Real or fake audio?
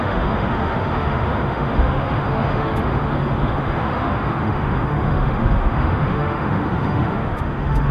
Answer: fake